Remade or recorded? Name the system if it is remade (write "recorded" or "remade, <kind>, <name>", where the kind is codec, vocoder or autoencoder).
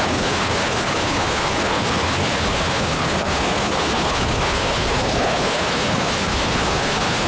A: remade, codec, HILCodec